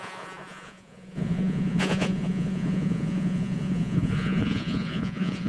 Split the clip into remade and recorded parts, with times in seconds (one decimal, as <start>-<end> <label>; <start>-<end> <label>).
0.0-5.5 remade